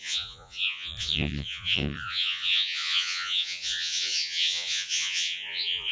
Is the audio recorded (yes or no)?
no